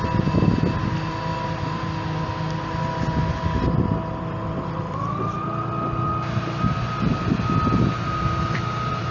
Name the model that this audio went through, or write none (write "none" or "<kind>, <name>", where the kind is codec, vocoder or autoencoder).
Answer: none